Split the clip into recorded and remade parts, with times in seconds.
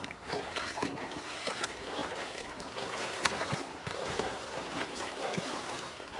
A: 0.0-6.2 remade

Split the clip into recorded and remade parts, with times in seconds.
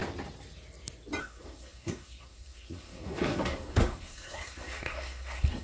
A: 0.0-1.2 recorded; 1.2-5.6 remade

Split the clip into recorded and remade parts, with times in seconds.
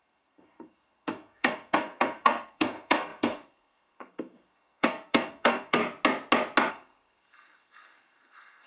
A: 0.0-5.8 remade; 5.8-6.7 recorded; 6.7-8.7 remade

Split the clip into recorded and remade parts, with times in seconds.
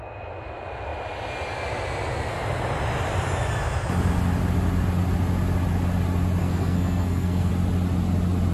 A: 0.0-6.4 recorded; 6.4-7.5 remade; 7.5-8.5 recorded